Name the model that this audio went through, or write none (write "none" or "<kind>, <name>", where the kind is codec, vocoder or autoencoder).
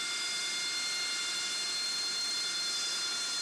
none